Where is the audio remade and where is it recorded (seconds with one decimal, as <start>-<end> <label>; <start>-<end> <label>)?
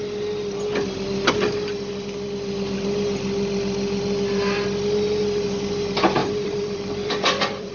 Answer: 0.0-6.2 recorded; 6.2-7.7 remade